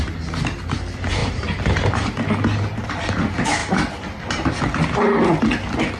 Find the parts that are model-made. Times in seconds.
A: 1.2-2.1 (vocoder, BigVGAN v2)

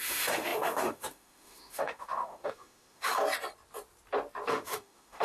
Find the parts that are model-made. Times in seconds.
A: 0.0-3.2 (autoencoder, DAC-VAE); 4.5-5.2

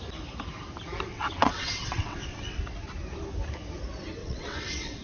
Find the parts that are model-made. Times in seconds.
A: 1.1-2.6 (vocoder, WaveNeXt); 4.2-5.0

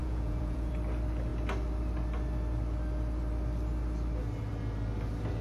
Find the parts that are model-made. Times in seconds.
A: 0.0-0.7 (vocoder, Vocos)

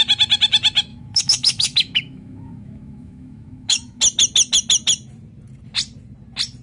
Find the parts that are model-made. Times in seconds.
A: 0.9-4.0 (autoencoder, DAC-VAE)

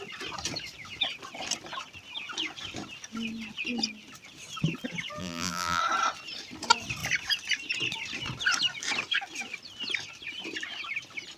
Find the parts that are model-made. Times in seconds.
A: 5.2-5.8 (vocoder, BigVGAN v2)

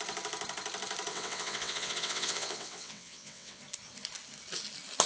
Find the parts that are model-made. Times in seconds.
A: 1.1-3.6 (vocoder, WaveNeXt)

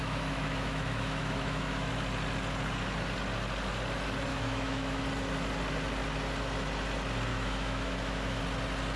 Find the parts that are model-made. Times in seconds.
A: 0.0-1.9 (autoencoder, DAC-VAE); 4.3-5.0; 7.3-8.4